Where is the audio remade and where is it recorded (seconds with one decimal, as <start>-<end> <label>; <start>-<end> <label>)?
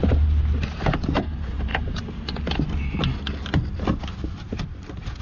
0.0-5.2 recorded